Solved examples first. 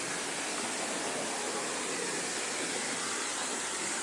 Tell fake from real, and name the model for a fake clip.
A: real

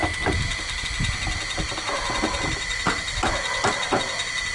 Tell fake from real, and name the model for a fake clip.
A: real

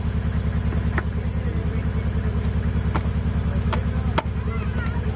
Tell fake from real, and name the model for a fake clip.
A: real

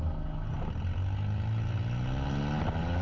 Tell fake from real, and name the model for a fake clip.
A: real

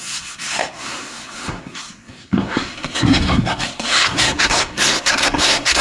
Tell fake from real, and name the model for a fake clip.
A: fake, codec, SNAC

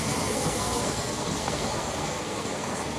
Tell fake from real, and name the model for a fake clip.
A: fake, codec, SNAC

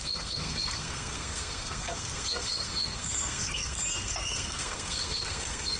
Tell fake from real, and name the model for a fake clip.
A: fake, codec, SNAC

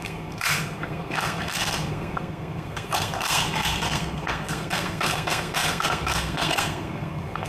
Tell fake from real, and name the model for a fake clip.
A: fake, codec, SNAC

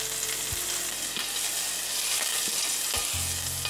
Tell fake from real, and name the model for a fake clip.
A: real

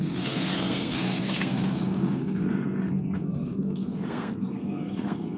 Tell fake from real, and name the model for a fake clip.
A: fake, codec, SNAC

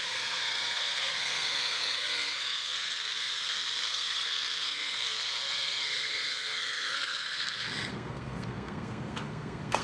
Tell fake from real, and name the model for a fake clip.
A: fake, codec, SNAC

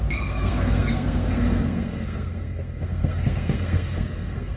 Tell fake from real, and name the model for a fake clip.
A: fake, codec, SNAC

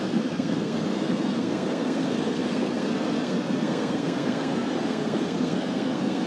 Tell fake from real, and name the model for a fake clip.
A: fake, codec, SNAC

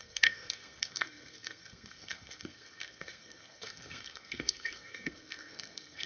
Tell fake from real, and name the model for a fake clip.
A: fake, codec, SNAC